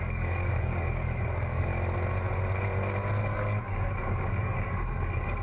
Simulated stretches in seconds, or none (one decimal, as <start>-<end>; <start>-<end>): 0.0-1.7; 3.2-5.4